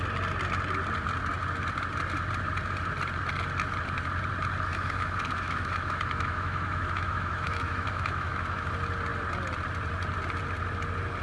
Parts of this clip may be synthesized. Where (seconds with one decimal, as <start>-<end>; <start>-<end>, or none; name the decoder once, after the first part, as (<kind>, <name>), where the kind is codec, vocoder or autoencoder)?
4.7-8.7 (autoencoder, DAC-VAE)